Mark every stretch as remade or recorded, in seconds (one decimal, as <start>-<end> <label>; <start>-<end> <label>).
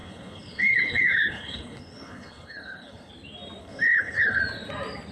0.0-3.1 remade; 3.1-3.6 recorded; 3.6-4.4 remade; 4.4-5.1 recorded